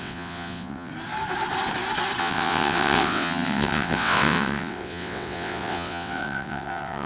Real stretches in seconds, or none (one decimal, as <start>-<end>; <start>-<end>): 0.9-2.2